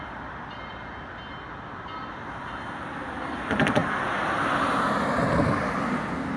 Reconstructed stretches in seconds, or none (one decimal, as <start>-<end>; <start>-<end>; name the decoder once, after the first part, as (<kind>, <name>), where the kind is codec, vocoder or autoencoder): none